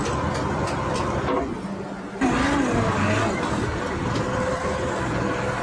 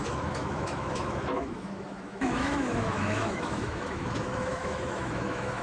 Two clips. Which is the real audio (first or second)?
first